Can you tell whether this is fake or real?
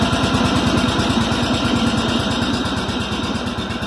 real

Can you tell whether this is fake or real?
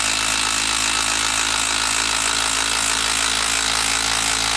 real